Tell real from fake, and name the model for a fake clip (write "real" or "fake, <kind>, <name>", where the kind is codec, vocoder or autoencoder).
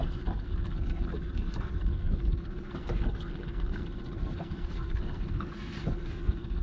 fake, codec, SNAC